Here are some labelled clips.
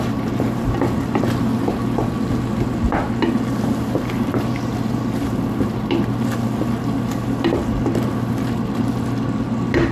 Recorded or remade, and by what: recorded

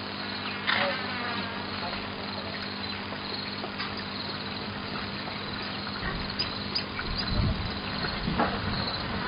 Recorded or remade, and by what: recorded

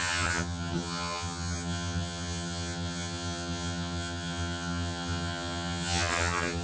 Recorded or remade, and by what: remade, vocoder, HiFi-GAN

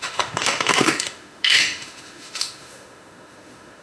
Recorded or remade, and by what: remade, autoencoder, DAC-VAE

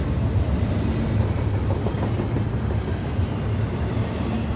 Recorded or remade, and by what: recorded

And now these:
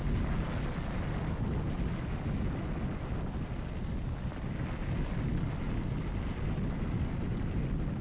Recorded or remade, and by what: recorded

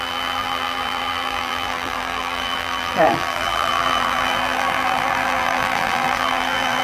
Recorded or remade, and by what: remade, vocoder, BigVGAN v2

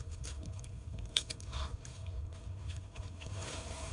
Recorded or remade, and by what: remade, codec, SNAC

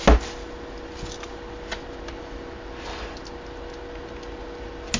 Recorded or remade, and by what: recorded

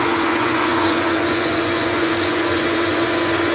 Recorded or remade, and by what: remade, vocoder, Vocos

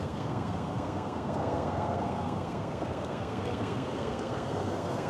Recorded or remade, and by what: remade, codec, SNAC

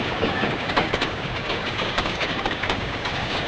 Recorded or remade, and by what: remade, codec, DAC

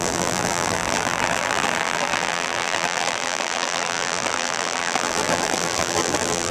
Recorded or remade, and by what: remade, vocoder, BigVGAN v2